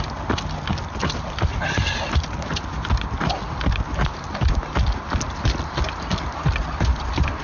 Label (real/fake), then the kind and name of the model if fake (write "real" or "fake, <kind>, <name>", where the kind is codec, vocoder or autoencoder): real